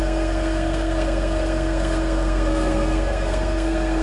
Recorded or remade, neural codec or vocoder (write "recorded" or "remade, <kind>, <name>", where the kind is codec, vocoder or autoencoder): remade, codec, SNAC